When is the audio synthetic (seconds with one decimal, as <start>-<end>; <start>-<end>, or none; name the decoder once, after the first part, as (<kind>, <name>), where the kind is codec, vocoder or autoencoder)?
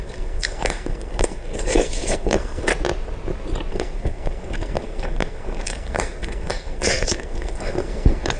0.0-2.7 (codec, SNAC); 3.7-8.4